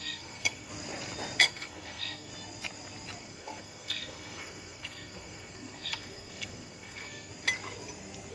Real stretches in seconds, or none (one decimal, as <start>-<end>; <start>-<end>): 0.7-1.4; 2.3-3.2; 7.3-8.3